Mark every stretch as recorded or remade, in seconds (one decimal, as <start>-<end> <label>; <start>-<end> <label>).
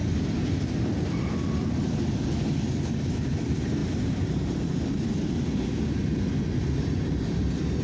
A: 0.0-3.8 recorded; 3.8-4.5 remade; 4.5-7.8 recorded